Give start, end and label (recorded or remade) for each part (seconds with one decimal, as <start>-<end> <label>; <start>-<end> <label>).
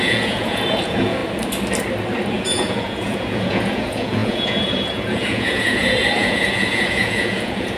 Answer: 0.0-1.2 remade; 1.2-2.3 recorded; 2.3-7.8 remade